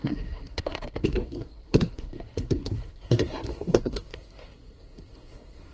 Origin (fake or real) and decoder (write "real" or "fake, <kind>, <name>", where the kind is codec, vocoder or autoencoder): fake, codec, SNAC